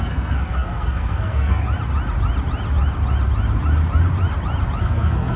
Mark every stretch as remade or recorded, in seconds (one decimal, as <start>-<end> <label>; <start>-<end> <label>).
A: 0.0-1.6 remade; 1.6-4.8 recorded; 4.8-5.4 remade